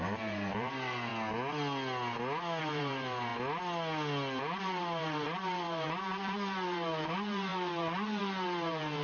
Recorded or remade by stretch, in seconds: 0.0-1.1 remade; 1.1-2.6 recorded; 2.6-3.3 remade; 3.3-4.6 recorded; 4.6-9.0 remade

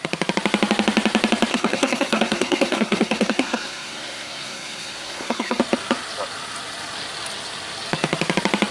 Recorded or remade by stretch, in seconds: 0.0-1.5 recorded; 1.5-5.6 remade; 5.6-8.7 recorded

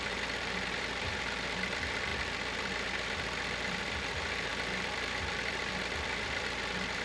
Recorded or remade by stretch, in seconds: 0.0-7.0 remade

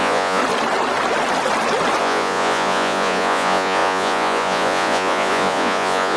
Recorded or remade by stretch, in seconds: 0.0-0.4 remade; 0.4-2.0 recorded; 2.0-6.2 remade

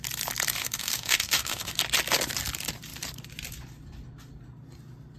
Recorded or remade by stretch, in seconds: 0.0-0.6 recorded; 0.6-1.7 remade; 1.7-5.2 recorded

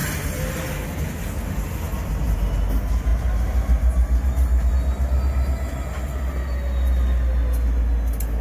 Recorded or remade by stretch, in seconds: 0.0-3.1 recorded; 3.1-4.7 remade; 4.7-8.4 recorded

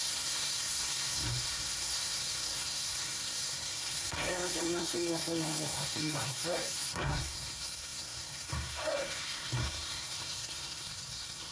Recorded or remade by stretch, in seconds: 0.0-11.5 remade